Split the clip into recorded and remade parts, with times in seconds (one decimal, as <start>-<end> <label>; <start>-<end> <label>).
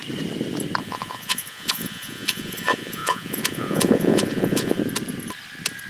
0.0-0.8 recorded; 0.8-4.8 remade; 4.8-5.9 recorded